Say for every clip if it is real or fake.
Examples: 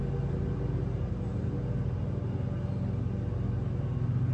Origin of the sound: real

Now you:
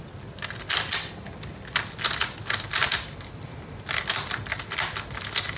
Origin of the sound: real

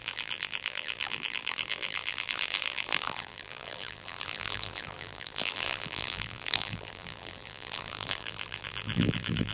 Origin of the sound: fake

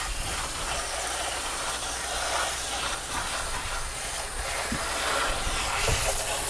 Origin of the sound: real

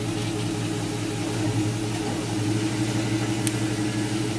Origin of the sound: real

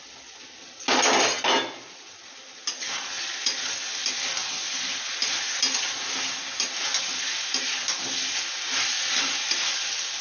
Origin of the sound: real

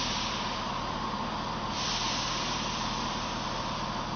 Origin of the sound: fake